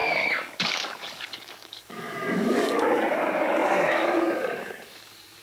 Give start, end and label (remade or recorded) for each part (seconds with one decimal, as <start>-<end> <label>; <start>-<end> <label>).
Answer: 0.0-5.4 remade